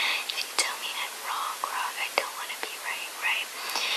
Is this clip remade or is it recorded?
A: recorded